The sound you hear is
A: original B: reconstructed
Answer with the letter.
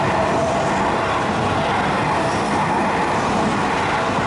A